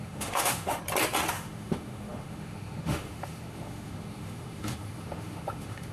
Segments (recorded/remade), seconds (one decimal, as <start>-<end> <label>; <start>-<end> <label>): 0.0-0.8 remade; 0.8-1.3 recorded; 1.3-5.9 remade